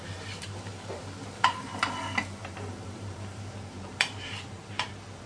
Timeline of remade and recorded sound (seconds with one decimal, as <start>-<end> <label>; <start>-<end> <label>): 0.0-1.0 remade; 1.0-2.4 recorded; 2.4-5.3 remade